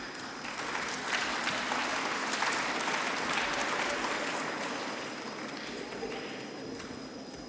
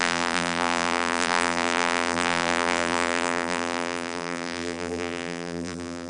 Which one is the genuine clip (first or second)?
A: first